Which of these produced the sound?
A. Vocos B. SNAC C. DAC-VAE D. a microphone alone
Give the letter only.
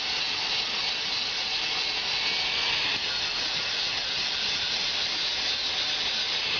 D